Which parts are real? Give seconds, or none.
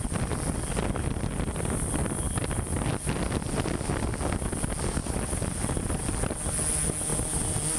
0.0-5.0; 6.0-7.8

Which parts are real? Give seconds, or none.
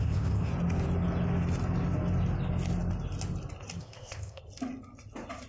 0.5-3.8; 4.4-5.5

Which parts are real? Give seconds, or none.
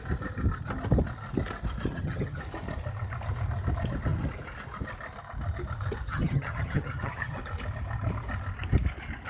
0.0-1.9; 2.4-6.1; 7.4-9.3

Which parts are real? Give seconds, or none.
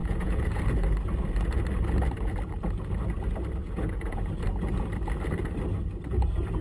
0.6-3.6; 4.3-6.6